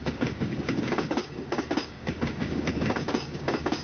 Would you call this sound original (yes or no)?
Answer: no